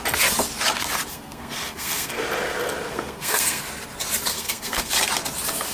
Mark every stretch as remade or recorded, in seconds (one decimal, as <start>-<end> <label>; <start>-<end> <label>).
0.0-1.1 recorded; 1.1-2.2 remade; 2.2-2.9 recorded; 2.9-3.6 remade; 3.6-4.3 recorded; 4.3-4.9 remade; 4.9-5.7 recorded